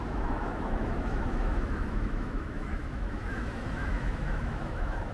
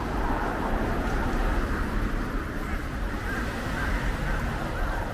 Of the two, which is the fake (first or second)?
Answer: first